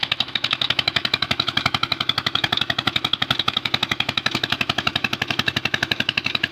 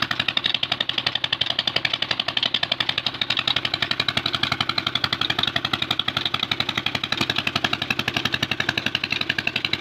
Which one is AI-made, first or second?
first